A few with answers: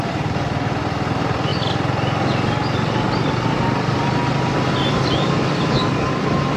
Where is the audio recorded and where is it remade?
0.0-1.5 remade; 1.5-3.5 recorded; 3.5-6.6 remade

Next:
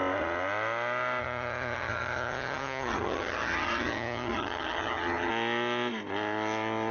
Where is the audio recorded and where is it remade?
0.0-1.2 recorded; 1.2-5.3 remade; 5.3-6.9 recorded

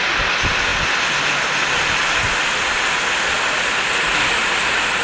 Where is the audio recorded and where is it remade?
0.0-5.0 recorded

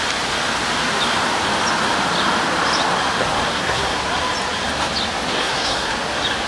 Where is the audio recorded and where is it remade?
0.0-3.5 recorded; 3.5-4.0 remade; 4.0-5.4 recorded; 5.4-5.9 remade; 5.9-6.5 recorded

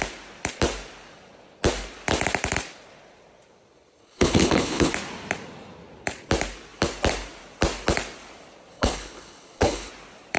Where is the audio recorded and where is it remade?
0.0-4.0 recorded; 4.0-4.9 remade; 4.9-8.7 recorded; 8.7-9.9 remade; 9.9-10.4 recorded